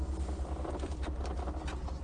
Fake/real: real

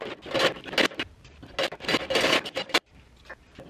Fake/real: real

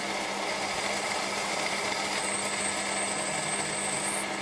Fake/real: real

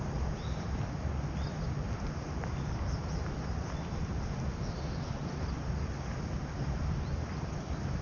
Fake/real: real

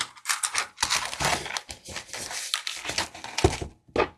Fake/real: real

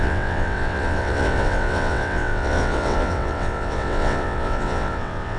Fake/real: fake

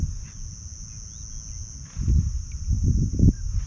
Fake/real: real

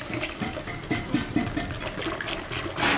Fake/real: real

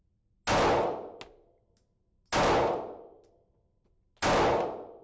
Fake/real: real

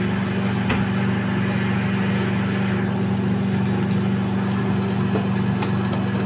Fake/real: real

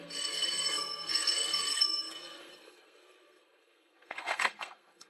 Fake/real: fake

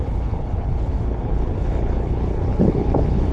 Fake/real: fake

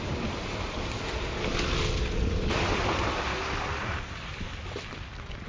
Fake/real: real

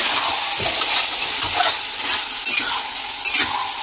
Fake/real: real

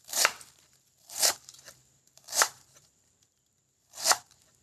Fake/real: fake